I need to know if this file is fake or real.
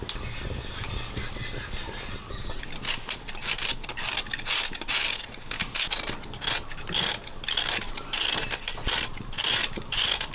real